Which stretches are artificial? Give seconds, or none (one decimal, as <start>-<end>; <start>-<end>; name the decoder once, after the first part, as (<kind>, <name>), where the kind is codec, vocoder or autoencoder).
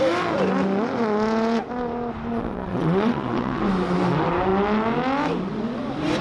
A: 2.3-3.6 (vocoder, WaveNeXt)